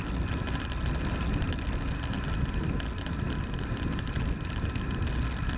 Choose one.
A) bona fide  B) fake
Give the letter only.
A